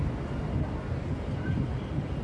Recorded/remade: recorded